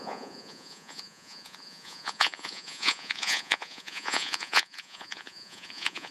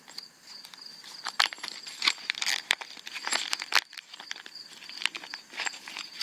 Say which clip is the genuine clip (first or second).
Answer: second